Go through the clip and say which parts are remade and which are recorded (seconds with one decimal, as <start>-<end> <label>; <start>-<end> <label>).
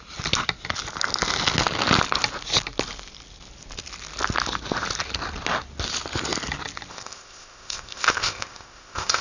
0.0-6.9 recorded; 6.9-9.2 remade